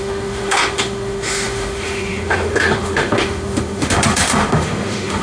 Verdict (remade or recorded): remade